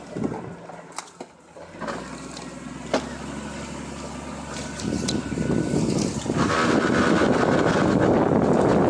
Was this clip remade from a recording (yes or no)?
no